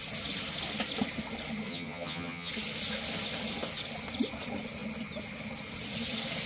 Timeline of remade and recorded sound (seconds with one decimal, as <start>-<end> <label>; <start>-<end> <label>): 0.0-1.7 recorded; 1.7-2.5 remade; 2.5-6.5 recorded